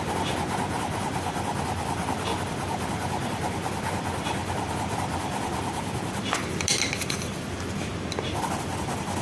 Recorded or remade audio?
recorded